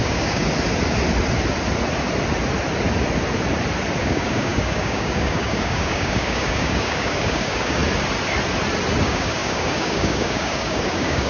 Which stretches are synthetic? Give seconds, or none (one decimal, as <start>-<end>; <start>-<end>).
0.0-0.4; 4.0-7.8; 9.0-11.3